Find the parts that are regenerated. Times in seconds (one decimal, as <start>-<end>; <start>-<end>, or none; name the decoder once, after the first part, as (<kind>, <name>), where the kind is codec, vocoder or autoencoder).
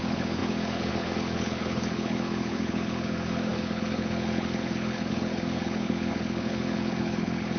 0.0-7.6 (codec, HILCodec)